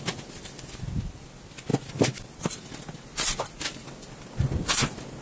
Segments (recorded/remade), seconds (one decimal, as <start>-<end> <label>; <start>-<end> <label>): 0.0-5.2 recorded